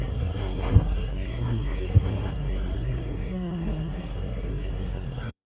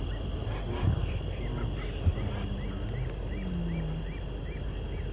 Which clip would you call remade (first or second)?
first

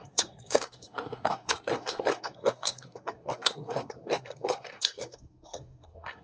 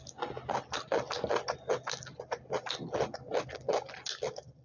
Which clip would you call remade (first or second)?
first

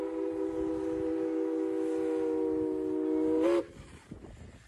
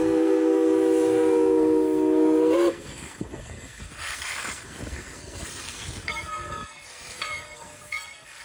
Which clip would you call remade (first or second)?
second